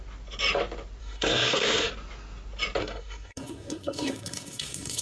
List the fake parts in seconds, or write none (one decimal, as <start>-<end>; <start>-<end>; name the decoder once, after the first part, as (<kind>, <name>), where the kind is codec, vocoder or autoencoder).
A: 1.0-1.9 (codec, SNAC); 2.8-5.0